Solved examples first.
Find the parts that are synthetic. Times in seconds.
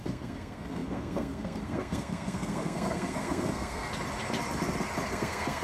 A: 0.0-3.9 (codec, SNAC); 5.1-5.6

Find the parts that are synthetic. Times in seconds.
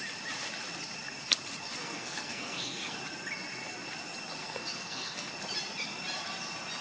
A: 1.8-3.0 (codec, SNAC); 4.4-5.3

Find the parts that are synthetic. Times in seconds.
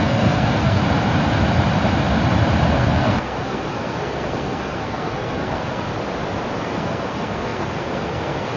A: 0.0-0.8 (codec, SNAC); 2.7-5.9; 6.6-8.6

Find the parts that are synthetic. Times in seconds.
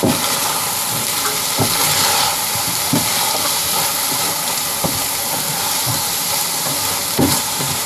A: none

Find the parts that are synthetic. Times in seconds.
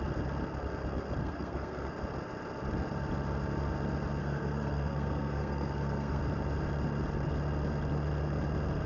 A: 1.2-1.9 (codec, SNAC); 4.2-6.2